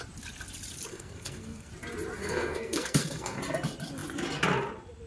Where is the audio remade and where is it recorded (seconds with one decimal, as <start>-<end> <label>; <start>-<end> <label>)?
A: 0.0-0.9 recorded; 0.9-1.7 remade; 1.7-2.2 recorded; 2.2-3.4 remade; 3.4-5.1 recorded